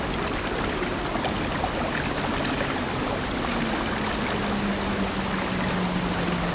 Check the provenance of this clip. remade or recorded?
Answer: recorded